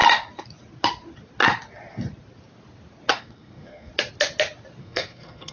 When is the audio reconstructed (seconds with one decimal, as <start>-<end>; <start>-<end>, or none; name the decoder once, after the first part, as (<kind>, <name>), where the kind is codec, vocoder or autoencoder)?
3.1-3.9 (codec, SNAC); 4.8-5.5